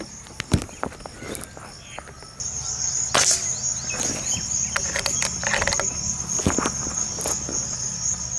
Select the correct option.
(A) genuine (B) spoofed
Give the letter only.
A